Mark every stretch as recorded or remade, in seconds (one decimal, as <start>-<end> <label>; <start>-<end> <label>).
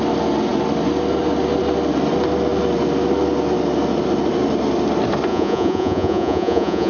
0.0-5.3 recorded; 5.3-6.9 remade